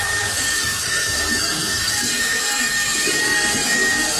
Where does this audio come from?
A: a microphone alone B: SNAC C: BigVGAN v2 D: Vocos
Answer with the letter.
B